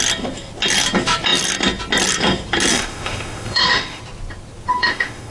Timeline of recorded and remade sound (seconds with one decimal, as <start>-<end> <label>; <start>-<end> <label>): 0.0-2.7 recorded; 2.7-4.0 remade; 4.0-4.7 recorded; 4.7-5.3 remade